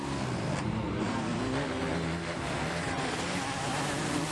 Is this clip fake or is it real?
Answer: real